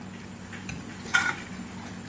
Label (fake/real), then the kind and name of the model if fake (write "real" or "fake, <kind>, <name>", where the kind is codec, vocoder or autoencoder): real